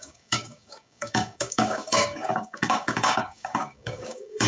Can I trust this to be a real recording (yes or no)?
no